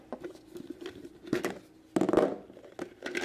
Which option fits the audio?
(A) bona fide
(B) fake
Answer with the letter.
A